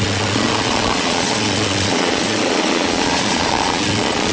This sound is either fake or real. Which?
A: fake